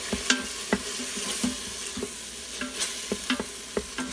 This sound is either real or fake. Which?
real